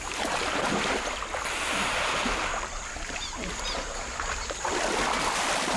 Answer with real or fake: real